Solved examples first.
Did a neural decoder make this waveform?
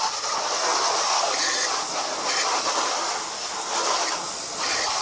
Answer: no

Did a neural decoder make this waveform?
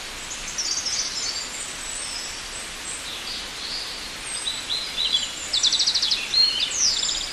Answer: no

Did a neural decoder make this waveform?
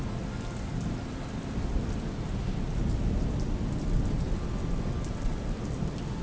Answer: no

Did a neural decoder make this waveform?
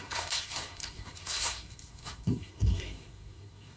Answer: yes